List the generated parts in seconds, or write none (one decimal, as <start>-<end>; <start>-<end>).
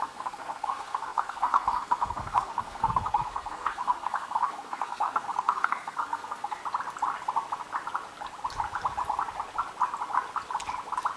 0.0-6.6